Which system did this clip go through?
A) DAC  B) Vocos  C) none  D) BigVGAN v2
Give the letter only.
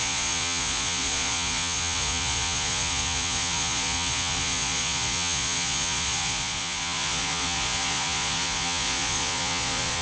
B